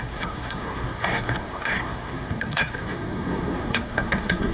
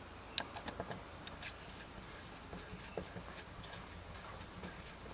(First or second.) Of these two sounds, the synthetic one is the first